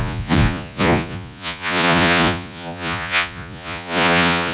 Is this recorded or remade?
remade